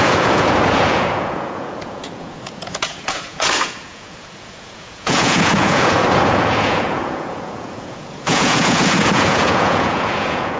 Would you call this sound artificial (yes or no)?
yes